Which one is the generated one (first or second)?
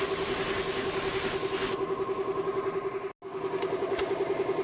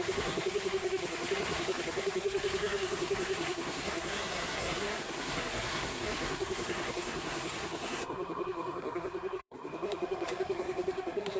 second